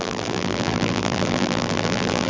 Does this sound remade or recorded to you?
remade